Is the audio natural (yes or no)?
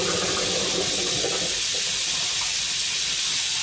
yes